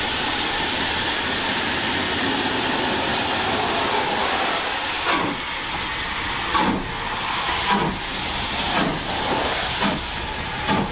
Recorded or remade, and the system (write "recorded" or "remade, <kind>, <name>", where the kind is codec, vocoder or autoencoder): recorded